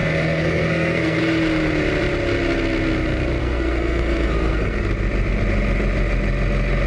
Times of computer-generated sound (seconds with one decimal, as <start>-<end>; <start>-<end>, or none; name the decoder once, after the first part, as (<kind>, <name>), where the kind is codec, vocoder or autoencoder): 0.0-1.2 (codec, SNAC); 3.4-4.8